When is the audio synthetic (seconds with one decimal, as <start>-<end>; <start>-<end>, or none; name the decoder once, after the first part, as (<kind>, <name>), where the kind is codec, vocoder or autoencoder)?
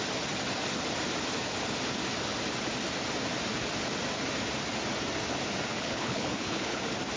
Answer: 5.7-6.8 (codec, HILCodec)